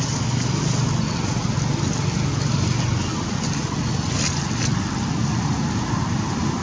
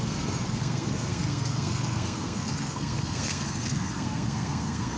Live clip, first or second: first